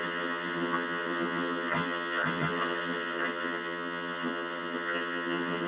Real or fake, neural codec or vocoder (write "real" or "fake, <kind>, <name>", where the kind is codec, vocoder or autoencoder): fake, vocoder, HiFi-GAN